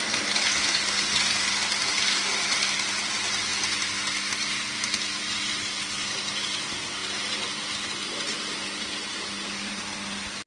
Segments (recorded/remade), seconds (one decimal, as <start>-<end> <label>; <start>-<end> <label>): 0.0-10.5 recorded